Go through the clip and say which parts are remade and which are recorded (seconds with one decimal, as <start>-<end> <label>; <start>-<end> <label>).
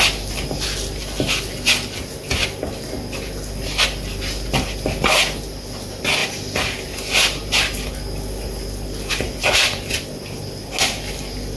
0.0-11.6 recorded